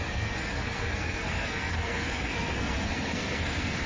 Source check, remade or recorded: remade